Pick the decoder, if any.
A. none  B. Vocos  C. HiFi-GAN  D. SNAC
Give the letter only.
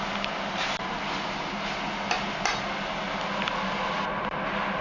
A